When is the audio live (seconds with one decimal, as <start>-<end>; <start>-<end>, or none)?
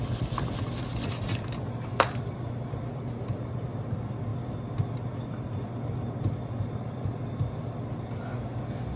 0.0-9.0